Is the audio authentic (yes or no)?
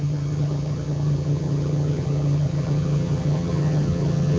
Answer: no